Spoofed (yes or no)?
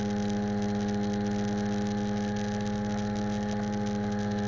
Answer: no